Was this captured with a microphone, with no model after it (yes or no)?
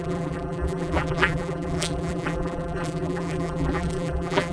no